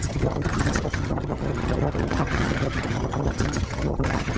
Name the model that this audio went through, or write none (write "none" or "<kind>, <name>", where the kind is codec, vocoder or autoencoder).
vocoder, HiFi-GAN